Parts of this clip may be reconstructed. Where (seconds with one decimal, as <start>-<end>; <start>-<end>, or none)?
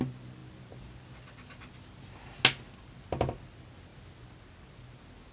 none